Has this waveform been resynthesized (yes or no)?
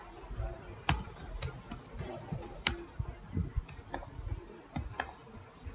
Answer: no